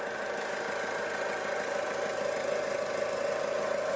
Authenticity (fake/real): real